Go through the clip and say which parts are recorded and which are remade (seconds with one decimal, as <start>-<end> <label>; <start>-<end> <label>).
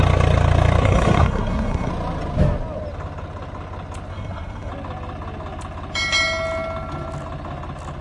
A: 0.0-0.8 recorded; 0.8-1.9 remade; 1.9-4.1 recorded; 4.1-4.7 remade; 4.7-8.0 recorded